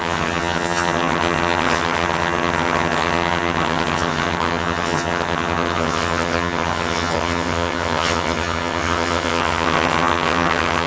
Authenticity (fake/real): fake